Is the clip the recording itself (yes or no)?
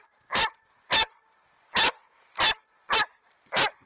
yes